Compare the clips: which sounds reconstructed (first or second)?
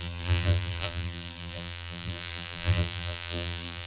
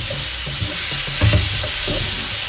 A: first